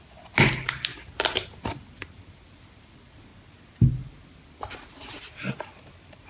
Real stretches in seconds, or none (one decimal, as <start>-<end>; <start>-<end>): 3.3-3.9